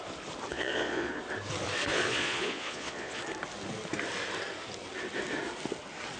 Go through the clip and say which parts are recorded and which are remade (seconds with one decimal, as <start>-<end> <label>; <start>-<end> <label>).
0.0-0.5 recorded; 0.5-1.2 remade; 1.2-1.9 recorded; 1.9-3.2 remade; 3.2-6.2 recorded